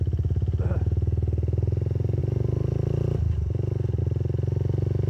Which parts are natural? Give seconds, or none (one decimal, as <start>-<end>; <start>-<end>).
0.0-5.1